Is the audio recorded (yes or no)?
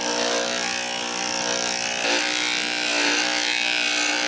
yes